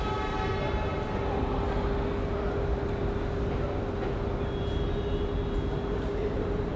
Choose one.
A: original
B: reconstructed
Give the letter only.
A